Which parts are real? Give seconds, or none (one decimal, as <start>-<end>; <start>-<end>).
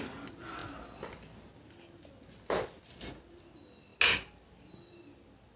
0.0-5.6